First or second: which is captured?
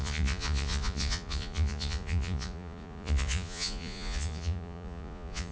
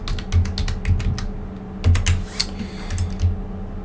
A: second